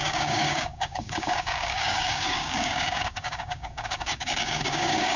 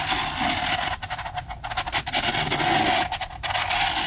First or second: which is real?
second